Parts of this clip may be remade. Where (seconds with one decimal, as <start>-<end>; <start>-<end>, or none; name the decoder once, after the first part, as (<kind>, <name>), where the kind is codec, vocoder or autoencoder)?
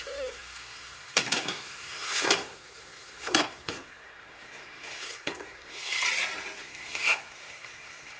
0.0-6.0 (codec, SNAC); 6.6-8.2